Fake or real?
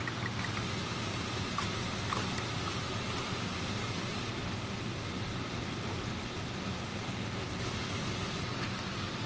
real